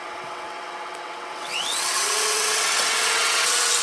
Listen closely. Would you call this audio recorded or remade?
remade